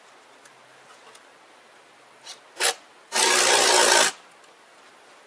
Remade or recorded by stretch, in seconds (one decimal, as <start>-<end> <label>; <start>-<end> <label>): 0.0-5.3 recorded